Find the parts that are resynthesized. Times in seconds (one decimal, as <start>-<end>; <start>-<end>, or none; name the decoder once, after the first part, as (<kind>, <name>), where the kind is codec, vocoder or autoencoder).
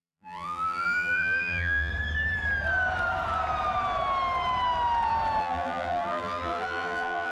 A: 0.0-1.9 (vocoder, BigVGAN v2); 5.4-7.3